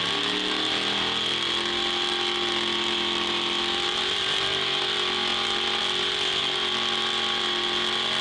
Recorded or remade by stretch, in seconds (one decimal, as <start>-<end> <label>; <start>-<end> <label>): 0.0-8.2 recorded